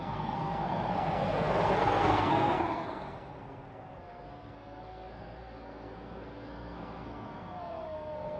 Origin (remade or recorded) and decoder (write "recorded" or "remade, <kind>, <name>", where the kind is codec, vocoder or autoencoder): remade, codec, SNAC